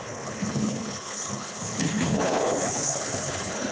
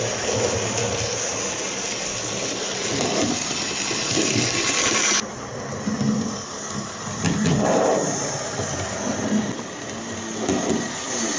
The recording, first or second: second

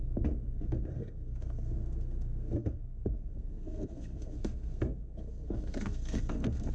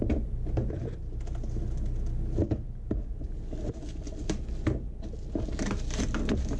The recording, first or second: second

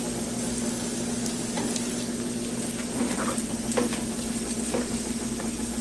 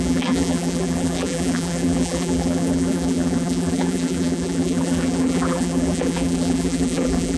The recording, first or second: first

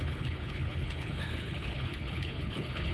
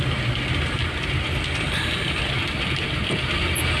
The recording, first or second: second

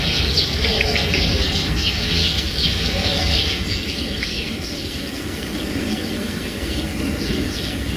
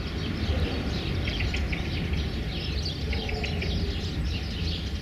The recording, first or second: second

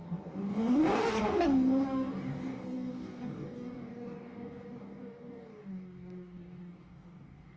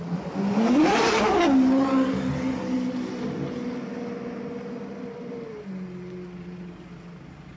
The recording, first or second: second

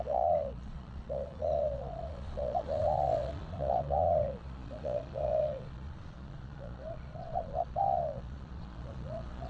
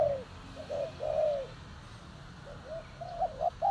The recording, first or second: second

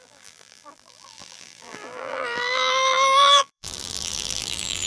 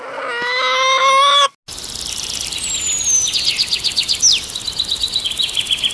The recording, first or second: second